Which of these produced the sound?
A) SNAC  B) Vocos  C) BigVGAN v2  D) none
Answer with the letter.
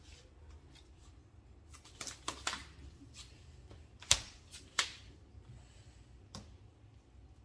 C